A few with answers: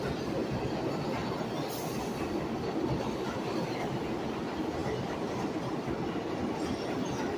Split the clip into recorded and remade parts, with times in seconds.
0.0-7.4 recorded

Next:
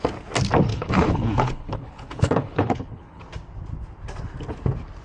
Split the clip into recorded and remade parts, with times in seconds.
0.0-0.7 recorded; 0.7-3.2 remade; 3.2-5.0 recorded

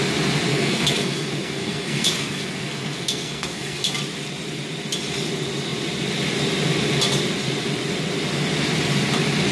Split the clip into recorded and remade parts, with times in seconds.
0.0-0.5 recorded; 0.5-3.9 remade; 3.9-9.5 recorded

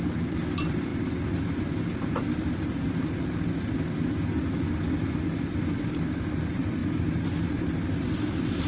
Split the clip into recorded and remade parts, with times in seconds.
0.0-8.7 recorded